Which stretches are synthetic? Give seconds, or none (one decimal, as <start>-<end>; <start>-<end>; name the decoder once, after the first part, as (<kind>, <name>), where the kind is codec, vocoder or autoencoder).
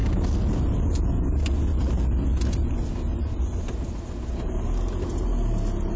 none